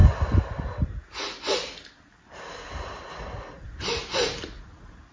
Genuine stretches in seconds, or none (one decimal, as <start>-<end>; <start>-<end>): 0.0-5.1